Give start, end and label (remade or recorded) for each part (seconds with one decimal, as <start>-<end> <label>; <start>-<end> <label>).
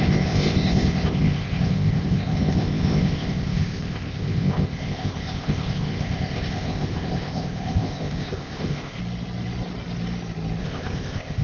0.0-9.0 remade; 9.0-10.6 recorded; 10.6-11.4 remade